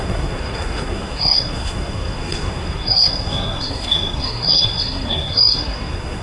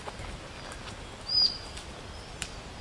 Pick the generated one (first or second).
first